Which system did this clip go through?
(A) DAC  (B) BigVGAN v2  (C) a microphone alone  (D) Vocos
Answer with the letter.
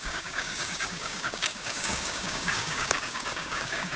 A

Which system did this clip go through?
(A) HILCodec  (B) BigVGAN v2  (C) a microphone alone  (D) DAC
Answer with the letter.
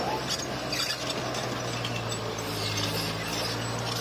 C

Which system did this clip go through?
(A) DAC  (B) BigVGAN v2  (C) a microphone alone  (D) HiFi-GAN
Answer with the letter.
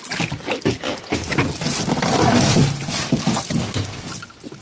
C